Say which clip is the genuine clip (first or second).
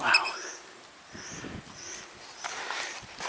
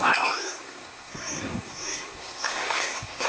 first